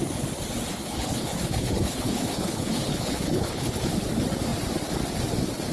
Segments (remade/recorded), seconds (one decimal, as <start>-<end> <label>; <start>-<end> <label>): 0.0-0.7 recorded; 0.7-4.1 remade; 4.1-5.7 recorded